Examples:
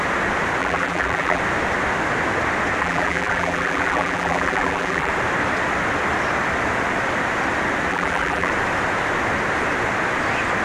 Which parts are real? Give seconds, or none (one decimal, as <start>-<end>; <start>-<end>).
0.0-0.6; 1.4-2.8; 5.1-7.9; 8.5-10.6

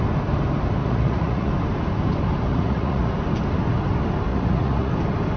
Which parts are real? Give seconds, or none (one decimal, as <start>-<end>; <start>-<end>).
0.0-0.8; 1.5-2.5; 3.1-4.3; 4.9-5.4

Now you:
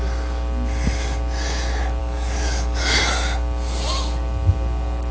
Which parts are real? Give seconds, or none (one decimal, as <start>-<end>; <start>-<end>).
0.0-2.0; 3.0-5.1